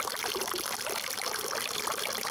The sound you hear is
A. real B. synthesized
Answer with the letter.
B